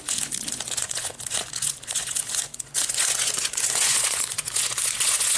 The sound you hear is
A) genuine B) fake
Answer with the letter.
B